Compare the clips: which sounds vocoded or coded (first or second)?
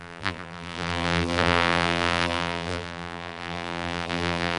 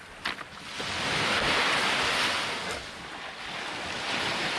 first